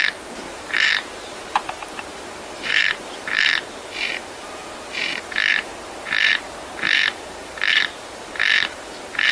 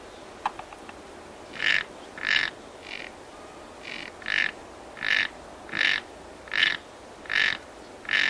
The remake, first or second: first